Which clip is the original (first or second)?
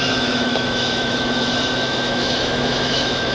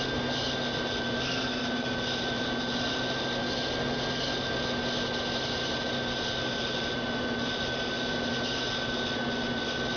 second